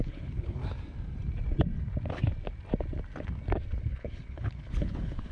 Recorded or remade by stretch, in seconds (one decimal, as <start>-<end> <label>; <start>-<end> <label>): 0.0-0.6 remade; 0.6-3.8 recorded; 3.8-5.3 remade